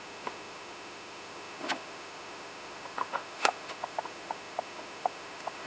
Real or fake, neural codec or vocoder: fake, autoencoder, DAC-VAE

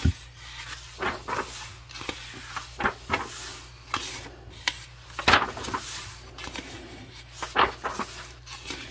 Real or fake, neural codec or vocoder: real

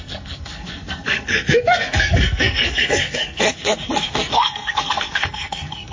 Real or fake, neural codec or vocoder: fake, codec, SNAC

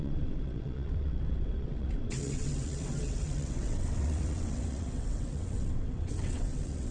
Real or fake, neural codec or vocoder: fake, vocoder, WaveNeXt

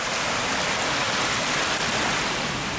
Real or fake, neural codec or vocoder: real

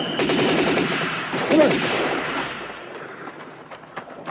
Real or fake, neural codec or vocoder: fake, vocoder, BigVGAN v2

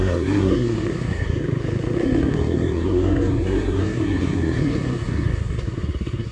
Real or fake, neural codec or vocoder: fake, codec, SNAC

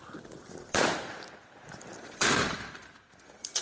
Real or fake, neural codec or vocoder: fake, vocoder, BigVGAN v2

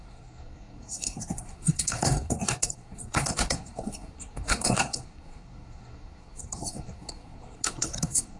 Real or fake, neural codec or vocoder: fake, codec, SNAC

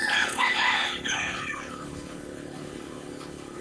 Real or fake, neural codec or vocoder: fake, codec, HILCodec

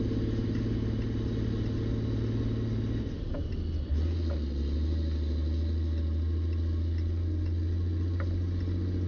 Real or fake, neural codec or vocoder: real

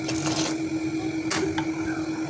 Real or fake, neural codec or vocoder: real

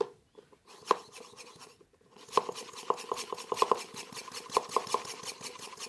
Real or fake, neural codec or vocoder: real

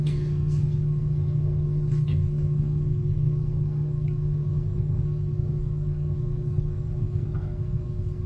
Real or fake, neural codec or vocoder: fake, codec, SNAC